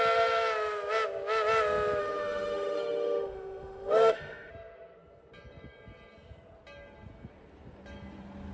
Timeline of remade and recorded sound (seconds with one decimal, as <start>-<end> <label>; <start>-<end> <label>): 0.0-2.0 recorded; 2.0-4.5 remade; 4.5-8.5 recorded